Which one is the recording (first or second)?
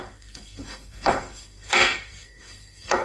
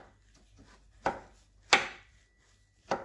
second